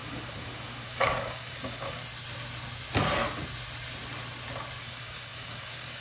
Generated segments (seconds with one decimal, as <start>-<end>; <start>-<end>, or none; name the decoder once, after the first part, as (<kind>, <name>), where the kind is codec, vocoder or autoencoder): 0.0-2.0 (codec, DAC); 4.8-6.0